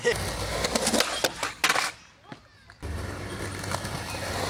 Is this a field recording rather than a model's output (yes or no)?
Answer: yes